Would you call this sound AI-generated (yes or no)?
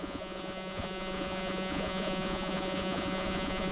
yes